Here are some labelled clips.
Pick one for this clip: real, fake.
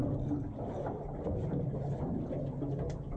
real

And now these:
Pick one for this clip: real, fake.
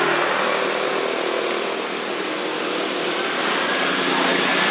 real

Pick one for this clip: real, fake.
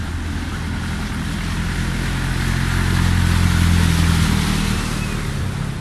real